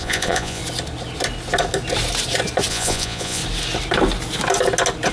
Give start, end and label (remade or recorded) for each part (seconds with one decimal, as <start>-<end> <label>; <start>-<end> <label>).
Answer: 0.0-0.6 remade; 0.6-2.7 recorded; 2.7-3.4 remade; 3.4-5.1 recorded